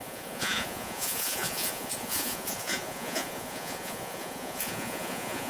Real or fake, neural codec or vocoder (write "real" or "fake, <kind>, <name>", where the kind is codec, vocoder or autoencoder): fake, vocoder, Vocos